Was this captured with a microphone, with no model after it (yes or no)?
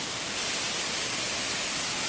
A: no